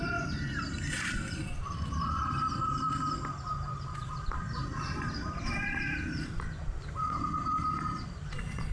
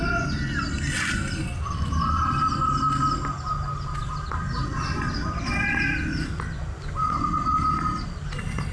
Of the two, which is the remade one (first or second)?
first